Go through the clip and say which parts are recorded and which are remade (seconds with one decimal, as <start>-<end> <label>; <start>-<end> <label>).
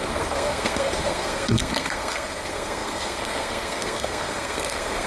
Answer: 0.0-5.1 remade